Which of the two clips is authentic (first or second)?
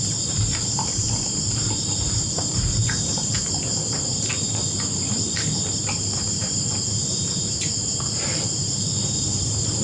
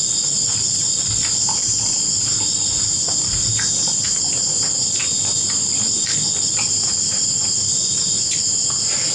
second